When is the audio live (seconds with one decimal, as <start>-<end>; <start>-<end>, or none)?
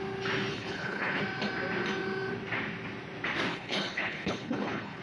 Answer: 0.0-0.5; 1.2-3.5